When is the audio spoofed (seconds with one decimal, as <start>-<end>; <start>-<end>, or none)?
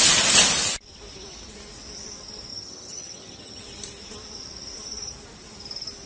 2.5-3.6